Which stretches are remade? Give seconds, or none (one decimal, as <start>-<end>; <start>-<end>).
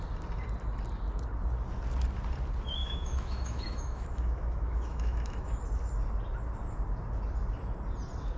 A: 2.8-5.6